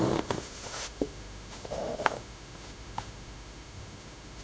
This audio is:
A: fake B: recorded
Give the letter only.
A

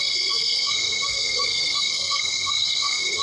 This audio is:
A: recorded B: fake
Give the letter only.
B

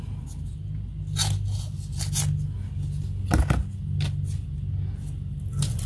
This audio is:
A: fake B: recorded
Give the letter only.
B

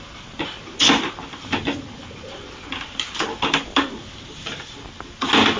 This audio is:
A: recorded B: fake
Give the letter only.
A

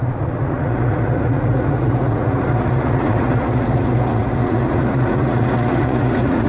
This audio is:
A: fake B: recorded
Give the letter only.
A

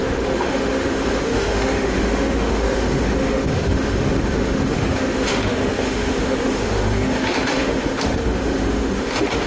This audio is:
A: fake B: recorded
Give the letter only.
A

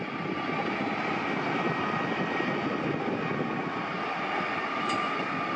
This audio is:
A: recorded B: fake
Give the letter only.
A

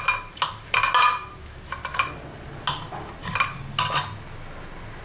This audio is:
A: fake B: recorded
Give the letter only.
B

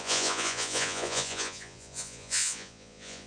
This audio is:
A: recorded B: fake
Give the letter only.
B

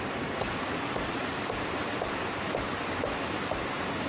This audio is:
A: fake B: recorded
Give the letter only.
B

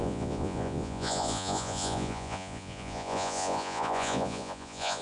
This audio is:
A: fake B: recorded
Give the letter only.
A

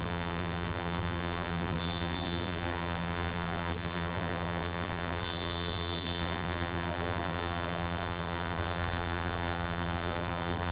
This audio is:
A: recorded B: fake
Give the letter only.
B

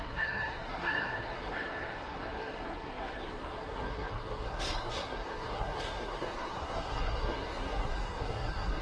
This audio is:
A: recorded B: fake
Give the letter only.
B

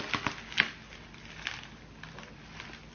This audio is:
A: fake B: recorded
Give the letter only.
B